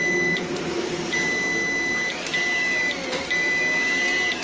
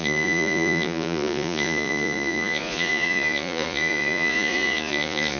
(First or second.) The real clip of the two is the first